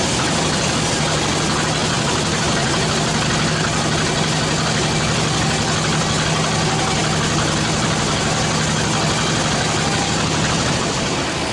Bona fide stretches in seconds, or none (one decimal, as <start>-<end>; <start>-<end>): 0.0-1.8; 2.9-11.5